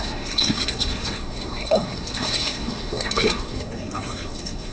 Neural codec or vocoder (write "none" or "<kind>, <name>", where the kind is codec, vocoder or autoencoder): codec, SNAC